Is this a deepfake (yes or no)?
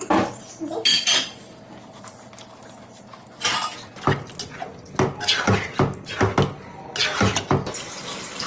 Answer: no